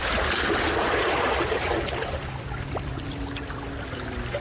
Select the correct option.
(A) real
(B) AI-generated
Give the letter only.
B